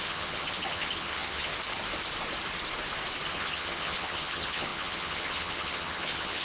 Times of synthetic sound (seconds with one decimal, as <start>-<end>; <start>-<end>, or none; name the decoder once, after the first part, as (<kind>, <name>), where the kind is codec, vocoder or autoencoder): 0.0-1.5 (vocoder, HiFi-GAN); 3.3-6.4